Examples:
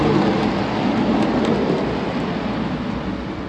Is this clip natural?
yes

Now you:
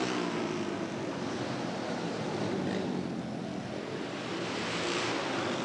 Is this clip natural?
yes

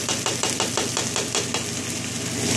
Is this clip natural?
yes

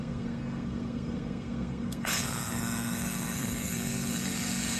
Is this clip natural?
no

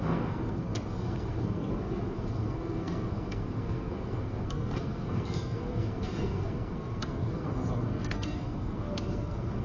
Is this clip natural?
no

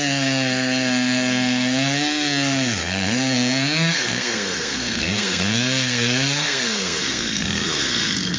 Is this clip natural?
no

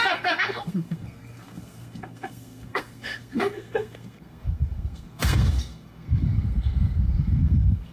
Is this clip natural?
no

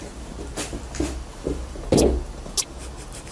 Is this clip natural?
yes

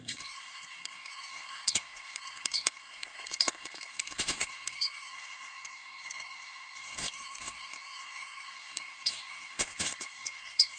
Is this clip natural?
no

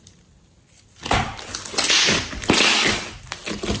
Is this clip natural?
yes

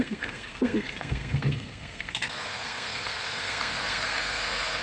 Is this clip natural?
no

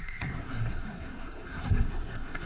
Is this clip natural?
no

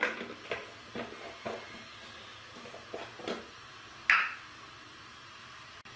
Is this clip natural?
yes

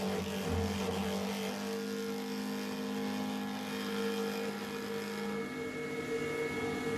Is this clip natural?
yes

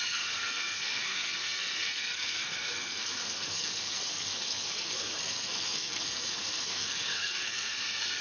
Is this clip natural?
no